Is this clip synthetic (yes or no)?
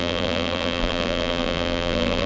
yes